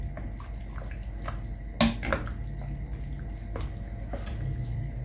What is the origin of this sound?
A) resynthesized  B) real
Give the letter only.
B